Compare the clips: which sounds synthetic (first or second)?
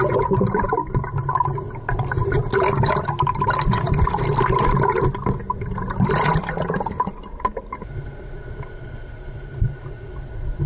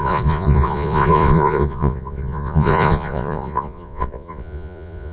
second